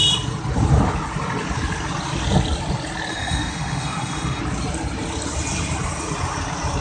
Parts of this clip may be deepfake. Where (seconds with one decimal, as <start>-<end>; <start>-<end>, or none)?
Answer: 3.1-4.4